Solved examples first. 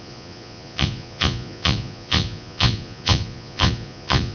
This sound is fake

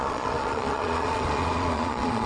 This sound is fake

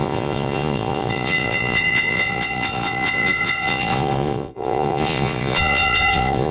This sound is fake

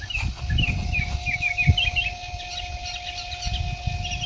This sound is real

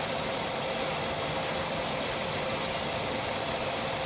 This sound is real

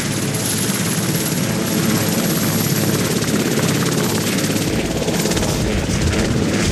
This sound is real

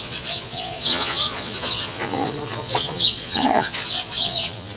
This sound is fake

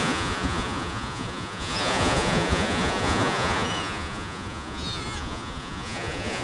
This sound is fake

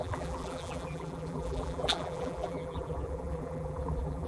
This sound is fake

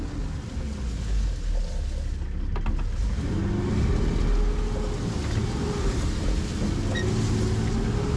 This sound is real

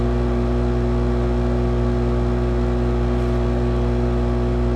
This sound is real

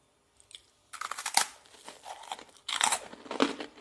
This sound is real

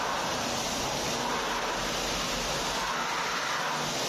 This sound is real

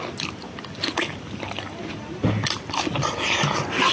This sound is real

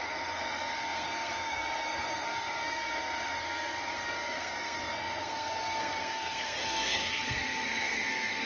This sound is fake